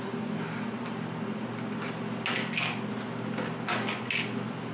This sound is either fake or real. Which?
real